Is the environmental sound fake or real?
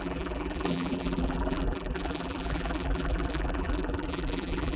fake